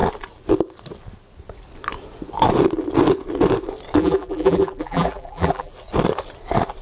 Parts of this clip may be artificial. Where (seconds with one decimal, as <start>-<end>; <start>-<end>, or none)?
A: 4.0-5.7